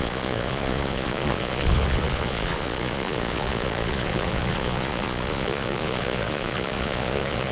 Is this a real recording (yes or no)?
no